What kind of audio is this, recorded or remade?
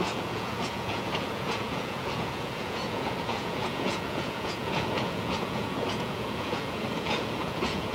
remade